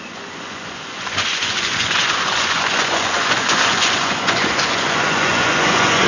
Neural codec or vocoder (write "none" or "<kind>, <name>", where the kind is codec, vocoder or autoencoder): vocoder, Vocos